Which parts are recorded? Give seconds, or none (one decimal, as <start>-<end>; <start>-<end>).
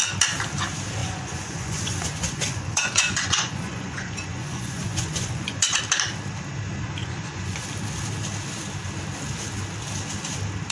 0.0-1.0; 5.8-7.0; 7.6-10.7